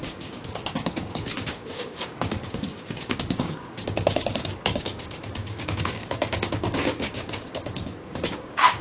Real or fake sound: fake